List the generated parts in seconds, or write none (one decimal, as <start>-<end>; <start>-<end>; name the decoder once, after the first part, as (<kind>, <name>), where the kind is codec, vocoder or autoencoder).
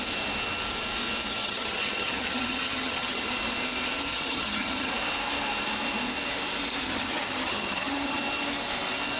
1.4-3.3 (vocoder, HiFi-GAN); 4.1-4.9; 6.8-8.2